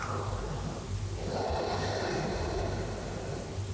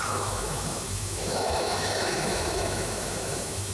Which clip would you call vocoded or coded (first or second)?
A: second